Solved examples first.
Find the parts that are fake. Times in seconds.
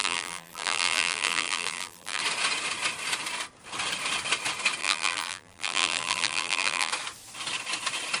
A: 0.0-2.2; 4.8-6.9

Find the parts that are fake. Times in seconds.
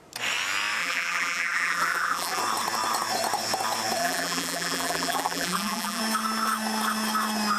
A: 0.8-2.4; 4.0-6.0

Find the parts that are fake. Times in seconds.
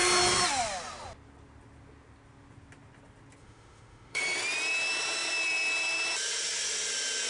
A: 3.4-4.2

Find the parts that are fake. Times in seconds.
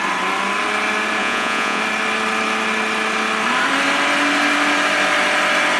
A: 1.2-1.8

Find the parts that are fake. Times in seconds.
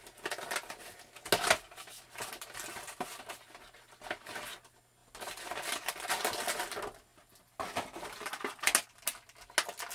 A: none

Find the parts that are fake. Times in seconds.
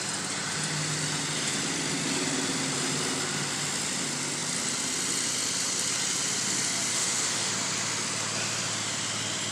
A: 6.9-7.5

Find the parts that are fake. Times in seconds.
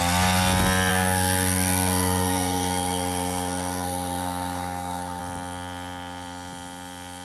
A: 0.9-5.2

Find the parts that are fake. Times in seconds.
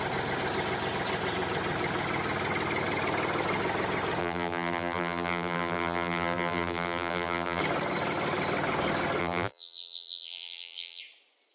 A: 4.2-7.6; 9.2-11.0